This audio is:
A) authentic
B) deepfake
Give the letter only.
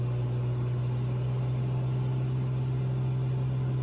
A